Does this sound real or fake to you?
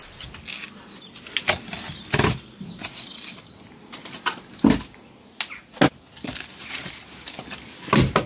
real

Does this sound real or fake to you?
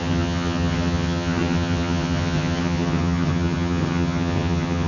fake